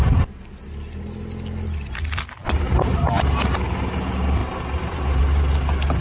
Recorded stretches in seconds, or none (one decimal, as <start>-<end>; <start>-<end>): 0.0-6.0